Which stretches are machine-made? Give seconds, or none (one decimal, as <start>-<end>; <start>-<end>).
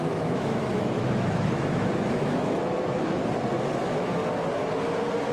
0.0-3.2; 3.8-4.2